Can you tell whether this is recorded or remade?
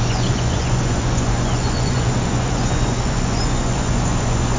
remade